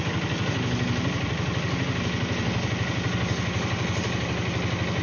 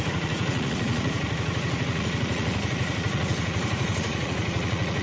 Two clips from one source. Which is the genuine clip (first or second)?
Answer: first